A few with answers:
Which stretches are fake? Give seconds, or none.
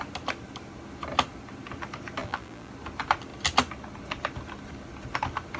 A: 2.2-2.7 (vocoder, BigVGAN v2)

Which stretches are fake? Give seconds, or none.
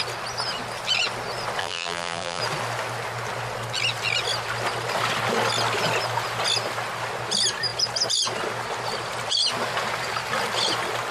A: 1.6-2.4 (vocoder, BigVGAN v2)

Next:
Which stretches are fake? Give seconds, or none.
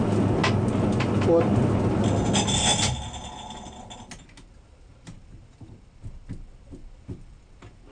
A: none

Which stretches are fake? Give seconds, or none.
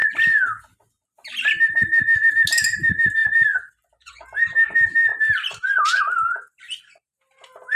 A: 3.2-4.1 (vocoder, BigVGAN v2)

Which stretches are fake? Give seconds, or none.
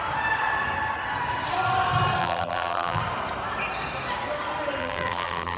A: 2.2-3.0 (vocoder, BigVGAN v2); 4.8-5.6